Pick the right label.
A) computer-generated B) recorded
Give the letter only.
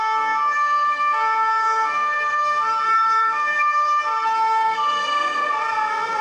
A